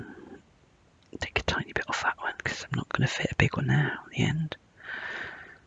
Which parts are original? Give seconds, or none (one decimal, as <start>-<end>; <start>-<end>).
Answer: 0.0-5.7